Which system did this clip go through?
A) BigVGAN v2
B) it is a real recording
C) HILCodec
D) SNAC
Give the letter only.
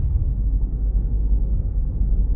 D